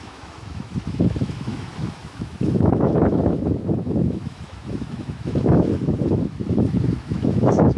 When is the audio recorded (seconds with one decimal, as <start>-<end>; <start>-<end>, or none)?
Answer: none